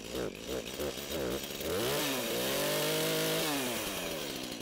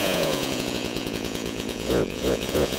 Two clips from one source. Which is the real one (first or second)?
first